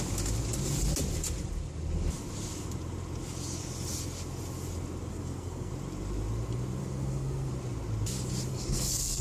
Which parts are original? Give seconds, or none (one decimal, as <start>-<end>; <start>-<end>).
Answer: 0.0-5.1; 5.7-6.8; 7.5-8.5